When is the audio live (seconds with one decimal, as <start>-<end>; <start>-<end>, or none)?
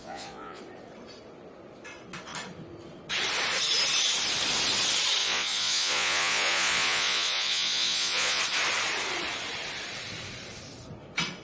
0.6-5.2; 8.4-11.4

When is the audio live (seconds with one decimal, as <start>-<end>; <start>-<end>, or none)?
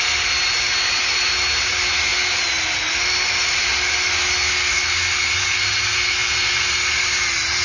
0.0-7.6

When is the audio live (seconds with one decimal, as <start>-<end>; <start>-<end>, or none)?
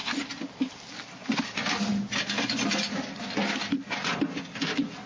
0.0-5.1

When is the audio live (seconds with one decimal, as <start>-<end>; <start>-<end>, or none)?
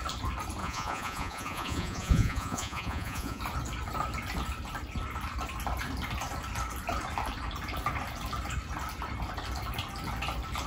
0.0-0.6; 3.4-10.7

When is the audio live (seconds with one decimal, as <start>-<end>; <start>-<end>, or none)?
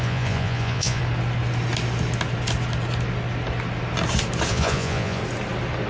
1.0-4.5; 5.2-5.9